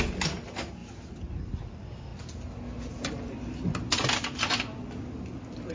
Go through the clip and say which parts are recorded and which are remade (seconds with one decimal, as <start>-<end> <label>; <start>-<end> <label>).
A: 0.0-5.7 recorded